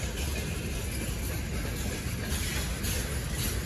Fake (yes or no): no